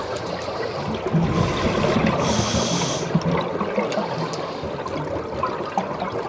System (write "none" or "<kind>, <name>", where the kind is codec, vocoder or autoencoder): none